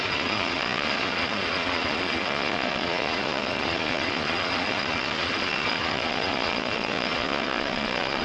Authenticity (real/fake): fake